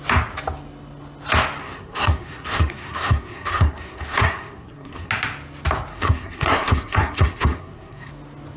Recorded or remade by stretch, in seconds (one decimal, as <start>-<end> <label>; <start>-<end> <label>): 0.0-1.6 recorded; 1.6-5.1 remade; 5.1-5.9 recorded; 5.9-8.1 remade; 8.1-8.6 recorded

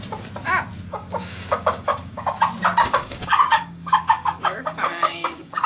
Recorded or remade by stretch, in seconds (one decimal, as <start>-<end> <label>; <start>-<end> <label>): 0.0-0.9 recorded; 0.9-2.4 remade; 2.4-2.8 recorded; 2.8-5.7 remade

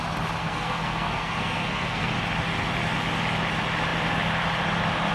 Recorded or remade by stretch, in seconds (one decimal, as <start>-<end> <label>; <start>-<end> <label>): 0.0-0.4 recorded; 0.4-2.1 remade; 2.1-5.1 recorded

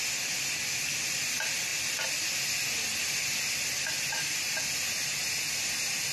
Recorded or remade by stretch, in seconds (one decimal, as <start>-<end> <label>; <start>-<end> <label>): 0.0-6.1 recorded